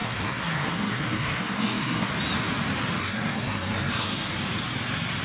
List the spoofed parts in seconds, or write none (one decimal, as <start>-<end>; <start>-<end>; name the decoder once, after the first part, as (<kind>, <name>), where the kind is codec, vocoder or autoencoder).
0.0-2.1 (codec, SNAC); 3.0-4.3